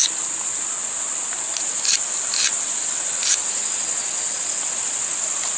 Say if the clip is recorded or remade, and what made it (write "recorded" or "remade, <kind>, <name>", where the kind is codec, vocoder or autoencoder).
recorded